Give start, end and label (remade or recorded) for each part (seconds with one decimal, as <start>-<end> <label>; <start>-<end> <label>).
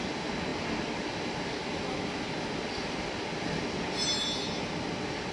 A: 0.0-5.3 recorded